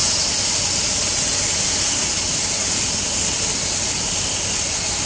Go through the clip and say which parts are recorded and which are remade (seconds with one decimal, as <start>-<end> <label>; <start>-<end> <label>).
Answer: 0.0-5.1 recorded